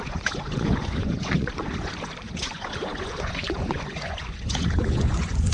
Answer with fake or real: fake